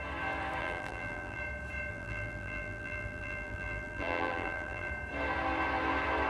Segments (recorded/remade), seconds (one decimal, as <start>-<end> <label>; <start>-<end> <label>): 0.0-0.6 recorded; 0.6-1.4 remade; 1.4-1.9 recorded; 1.9-4.9 remade; 4.9-6.3 recorded